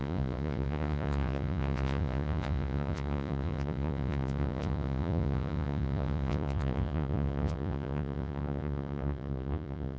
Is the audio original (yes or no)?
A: no